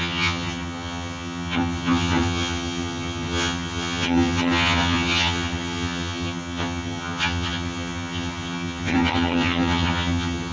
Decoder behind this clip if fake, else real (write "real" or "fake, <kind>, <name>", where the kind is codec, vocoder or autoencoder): fake, vocoder, HiFi-GAN